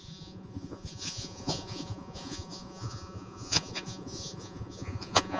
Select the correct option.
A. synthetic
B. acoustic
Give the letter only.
A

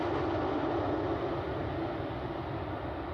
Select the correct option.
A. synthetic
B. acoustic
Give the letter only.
B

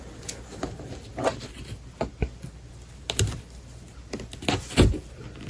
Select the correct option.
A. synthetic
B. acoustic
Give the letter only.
B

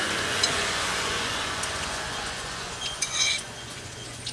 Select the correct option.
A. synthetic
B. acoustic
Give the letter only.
A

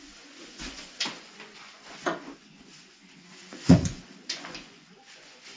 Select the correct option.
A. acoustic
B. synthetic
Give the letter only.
B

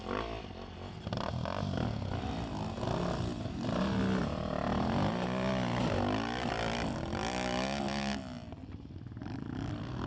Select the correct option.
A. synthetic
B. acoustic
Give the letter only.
B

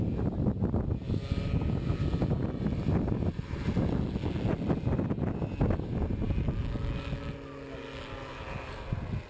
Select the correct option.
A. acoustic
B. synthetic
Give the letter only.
A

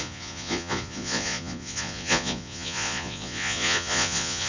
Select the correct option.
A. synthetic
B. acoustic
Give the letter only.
A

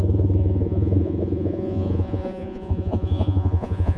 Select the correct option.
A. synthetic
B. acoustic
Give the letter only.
A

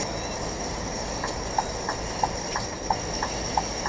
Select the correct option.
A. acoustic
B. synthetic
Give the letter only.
A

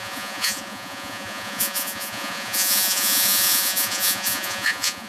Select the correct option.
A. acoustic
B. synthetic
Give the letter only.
B